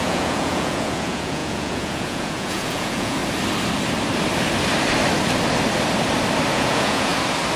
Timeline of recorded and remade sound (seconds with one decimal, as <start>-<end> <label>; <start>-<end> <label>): 0.0-3.2 remade; 3.2-6.5 recorded; 6.5-7.1 remade; 7.1-7.6 recorded